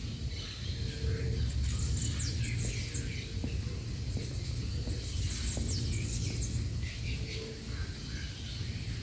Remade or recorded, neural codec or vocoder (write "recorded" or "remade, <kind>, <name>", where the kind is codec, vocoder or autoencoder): recorded